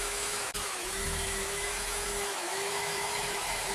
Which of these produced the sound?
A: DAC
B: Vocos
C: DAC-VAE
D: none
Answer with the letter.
C